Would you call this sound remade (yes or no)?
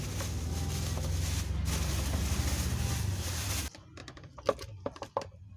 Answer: no